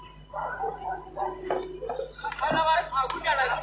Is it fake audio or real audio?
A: real